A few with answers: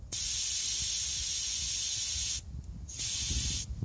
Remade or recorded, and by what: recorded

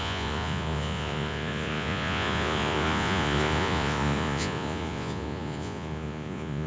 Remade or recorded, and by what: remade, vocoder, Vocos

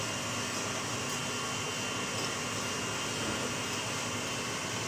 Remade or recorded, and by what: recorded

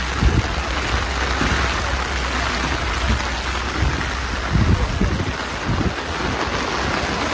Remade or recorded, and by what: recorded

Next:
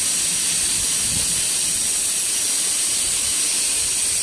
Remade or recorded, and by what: recorded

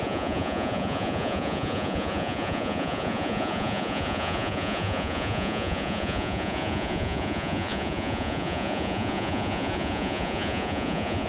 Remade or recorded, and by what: remade, vocoder, Vocos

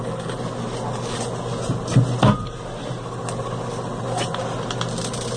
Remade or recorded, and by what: recorded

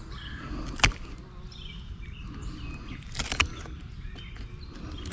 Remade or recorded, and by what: recorded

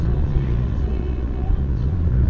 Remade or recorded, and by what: remade, vocoder, Vocos